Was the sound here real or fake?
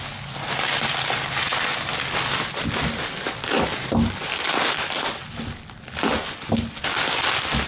real